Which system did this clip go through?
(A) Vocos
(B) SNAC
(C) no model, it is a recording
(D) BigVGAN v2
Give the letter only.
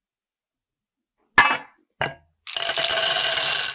C